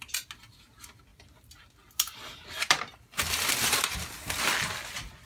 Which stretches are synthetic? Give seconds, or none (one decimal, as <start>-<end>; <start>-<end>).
none